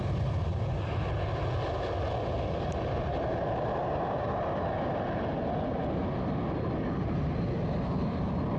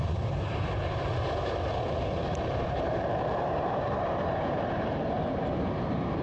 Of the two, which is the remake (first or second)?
second